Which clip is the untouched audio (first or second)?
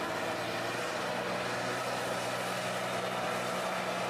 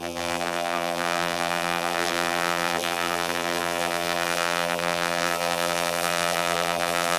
first